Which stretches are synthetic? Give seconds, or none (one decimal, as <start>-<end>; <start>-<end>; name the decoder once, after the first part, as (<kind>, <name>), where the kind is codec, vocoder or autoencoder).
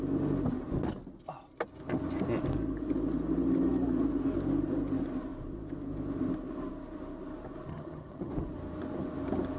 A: 7.7-8.3 (vocoder, HiFi-GAN)